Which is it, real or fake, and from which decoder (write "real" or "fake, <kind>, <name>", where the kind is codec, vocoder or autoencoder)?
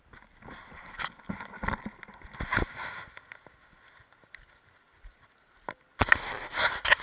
real